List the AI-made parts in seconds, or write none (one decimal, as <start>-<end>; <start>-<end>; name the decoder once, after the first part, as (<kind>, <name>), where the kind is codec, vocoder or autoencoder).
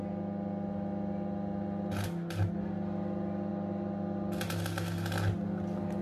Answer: none